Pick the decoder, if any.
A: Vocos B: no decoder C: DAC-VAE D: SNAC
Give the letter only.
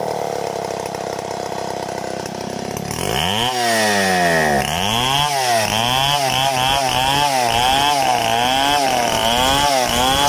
B